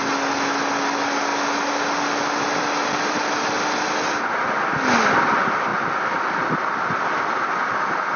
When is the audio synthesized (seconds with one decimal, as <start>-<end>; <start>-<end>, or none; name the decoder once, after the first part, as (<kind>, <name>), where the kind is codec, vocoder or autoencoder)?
none